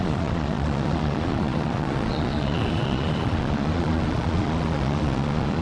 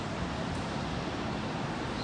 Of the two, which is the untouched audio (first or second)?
second